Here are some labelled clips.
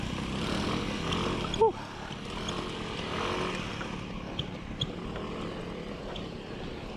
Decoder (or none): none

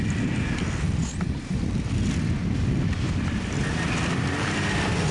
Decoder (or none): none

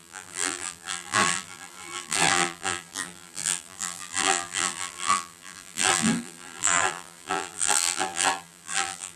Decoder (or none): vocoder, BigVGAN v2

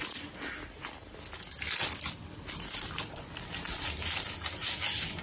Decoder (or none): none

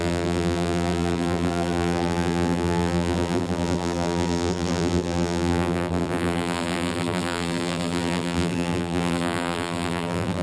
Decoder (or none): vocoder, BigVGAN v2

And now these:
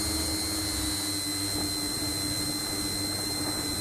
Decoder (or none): none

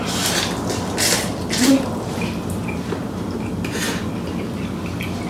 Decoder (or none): vocoder, BigVGAN v2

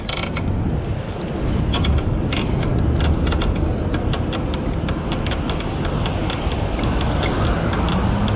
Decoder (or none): none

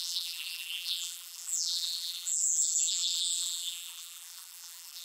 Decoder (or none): vocoder, BigVGAN v2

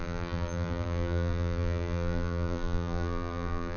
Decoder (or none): vocoder, BigVGAN v2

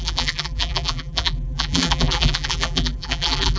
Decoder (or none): vocoder, BigVGAN v2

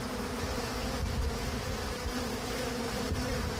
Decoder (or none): none